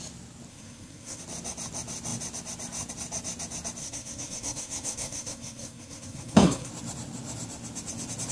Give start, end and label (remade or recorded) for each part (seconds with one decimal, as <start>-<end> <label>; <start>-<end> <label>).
0.0-0.5 recorded; 0.5-1.2 remade; 1.2-3.8 recorded; 3.8-6.7 remade; 6.7-8.3 recorded